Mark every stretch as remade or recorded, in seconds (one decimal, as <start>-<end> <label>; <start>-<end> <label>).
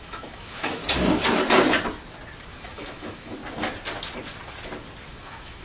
0.0-0.8 remade; 0.8-2.5 recorded; 2.5-3.4 remade; 3.4-5.1 recorded; 5.1-5.6 remade